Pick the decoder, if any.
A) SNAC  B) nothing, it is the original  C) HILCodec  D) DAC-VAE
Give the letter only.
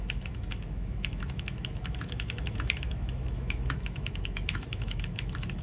D